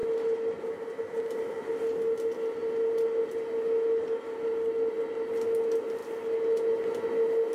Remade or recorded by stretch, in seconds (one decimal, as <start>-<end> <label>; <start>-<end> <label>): 0.0-7.5 recorded